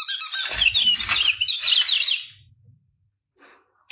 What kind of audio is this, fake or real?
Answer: real